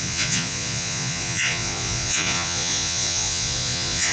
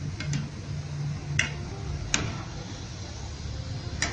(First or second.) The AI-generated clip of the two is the first